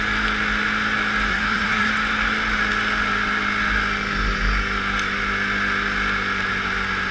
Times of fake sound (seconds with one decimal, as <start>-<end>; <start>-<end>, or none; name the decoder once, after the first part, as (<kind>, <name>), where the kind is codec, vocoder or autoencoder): 1.3-1.9 (codec, SNAC)